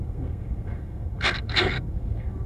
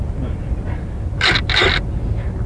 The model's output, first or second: first